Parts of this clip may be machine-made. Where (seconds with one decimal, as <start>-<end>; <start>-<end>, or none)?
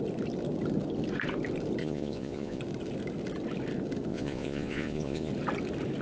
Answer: 1.8-2.6; 4.1-5.3